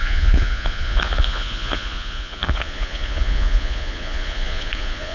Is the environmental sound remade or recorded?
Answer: remade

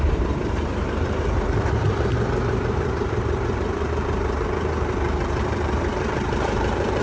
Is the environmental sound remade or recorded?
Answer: remade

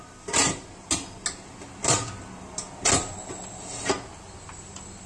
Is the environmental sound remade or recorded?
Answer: recorded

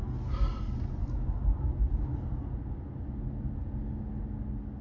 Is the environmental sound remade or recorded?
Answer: recorded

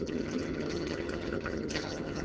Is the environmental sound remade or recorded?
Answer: remade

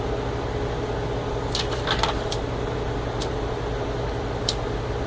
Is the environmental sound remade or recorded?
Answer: recorded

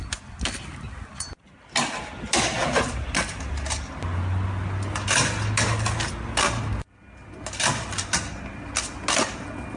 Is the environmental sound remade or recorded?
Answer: recorded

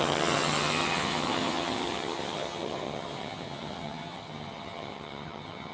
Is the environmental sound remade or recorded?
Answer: remade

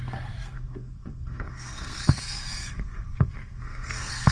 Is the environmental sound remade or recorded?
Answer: remade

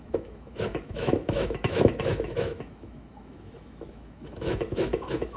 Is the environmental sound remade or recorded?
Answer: remade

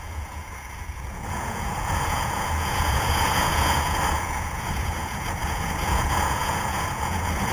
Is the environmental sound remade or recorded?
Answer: remade